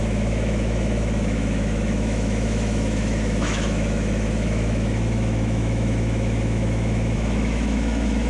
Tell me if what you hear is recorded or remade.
remade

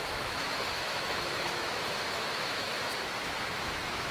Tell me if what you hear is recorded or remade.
remade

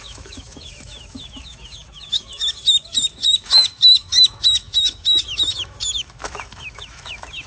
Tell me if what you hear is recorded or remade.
remade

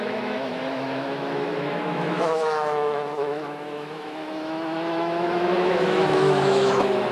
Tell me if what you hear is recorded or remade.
remade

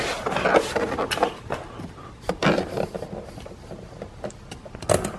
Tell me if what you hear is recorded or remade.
recorded